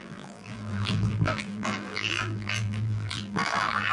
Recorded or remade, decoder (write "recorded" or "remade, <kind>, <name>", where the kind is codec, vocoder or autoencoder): remade, vocoder, BigVGAN v2